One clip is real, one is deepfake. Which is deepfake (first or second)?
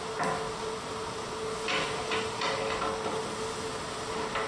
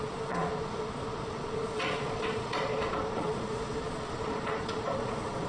second